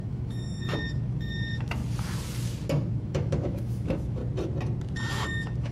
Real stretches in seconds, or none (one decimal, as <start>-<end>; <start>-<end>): 1.8-2.9; 4.2-5.1